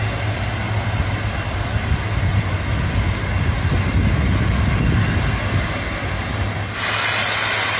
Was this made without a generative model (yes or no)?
yes